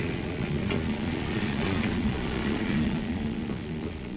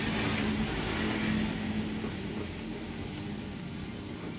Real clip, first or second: second